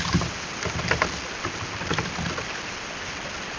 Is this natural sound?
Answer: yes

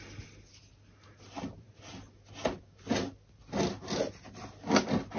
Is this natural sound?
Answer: yes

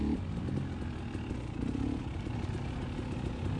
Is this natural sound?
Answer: yes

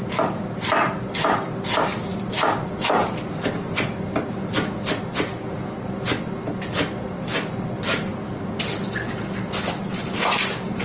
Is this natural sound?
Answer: yes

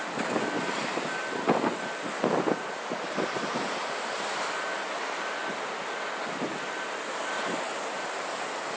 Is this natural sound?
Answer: yes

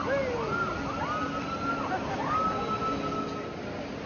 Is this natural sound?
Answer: yes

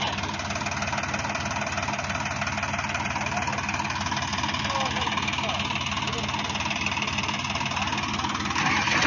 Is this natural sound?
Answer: yes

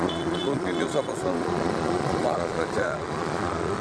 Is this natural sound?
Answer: no